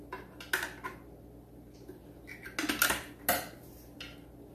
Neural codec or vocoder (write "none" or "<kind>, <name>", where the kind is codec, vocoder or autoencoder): none